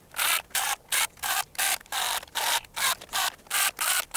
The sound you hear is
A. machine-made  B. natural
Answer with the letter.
A